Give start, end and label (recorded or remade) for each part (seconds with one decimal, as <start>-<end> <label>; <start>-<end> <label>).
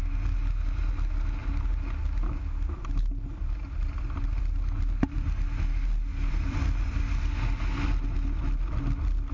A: 0.0-6.1 recorded; 6.1-7.0 remade; 7.0-9.3 recorded